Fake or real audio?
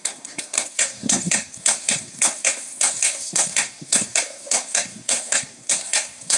fake